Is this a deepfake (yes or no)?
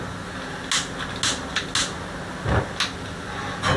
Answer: no